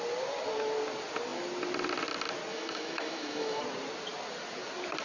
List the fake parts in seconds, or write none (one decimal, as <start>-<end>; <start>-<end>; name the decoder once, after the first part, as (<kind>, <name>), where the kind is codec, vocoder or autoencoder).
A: 2.5-3.6 (autoencoder, DAC-VAE)